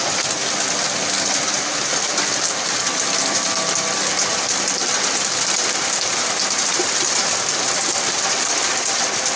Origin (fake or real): real